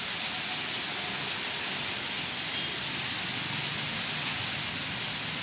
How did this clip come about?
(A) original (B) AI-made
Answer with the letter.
A